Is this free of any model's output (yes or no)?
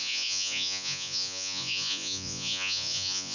no